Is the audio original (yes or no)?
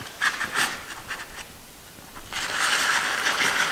yes